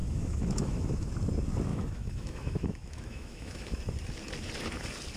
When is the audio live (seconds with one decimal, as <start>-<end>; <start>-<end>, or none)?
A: 1.1-1.7; 3.8-5.2